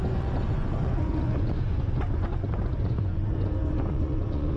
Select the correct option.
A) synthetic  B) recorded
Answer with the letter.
A